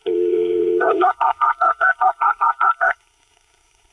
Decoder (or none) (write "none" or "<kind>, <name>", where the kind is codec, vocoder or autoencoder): codec, SNAC